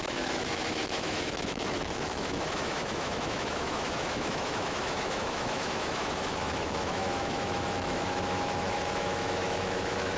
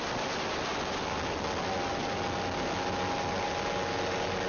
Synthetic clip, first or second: first